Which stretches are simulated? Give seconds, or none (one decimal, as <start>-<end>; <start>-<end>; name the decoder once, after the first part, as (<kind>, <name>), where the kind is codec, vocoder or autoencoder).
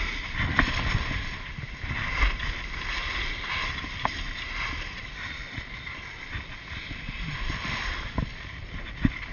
none